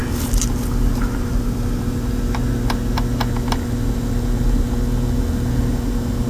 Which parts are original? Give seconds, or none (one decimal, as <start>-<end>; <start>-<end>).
0.0-6.3